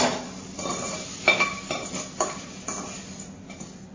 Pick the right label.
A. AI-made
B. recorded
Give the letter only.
B